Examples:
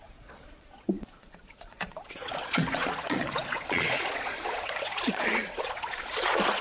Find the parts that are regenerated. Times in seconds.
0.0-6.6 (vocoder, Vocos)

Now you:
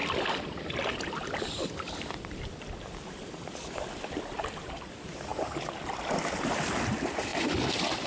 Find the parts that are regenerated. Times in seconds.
0.0-5.3 (vocoder, BigVGAN v2); 5.9-8.1

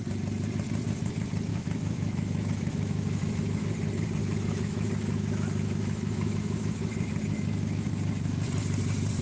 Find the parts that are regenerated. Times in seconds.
1.5-3.7 (autoencoder, DAC-VAE); 4.2-7.9

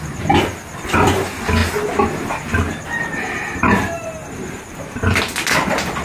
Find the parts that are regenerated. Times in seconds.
1.6-5.2 (vocoder, BigVGAN v2)